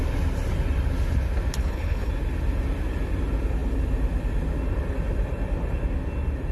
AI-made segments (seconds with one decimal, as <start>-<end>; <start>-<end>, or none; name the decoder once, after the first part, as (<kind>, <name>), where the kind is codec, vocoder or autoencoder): 1.6-2.1 (codec, HILCodec)